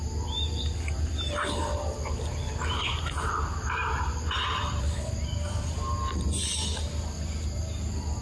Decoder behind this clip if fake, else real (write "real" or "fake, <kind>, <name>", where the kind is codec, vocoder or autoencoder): real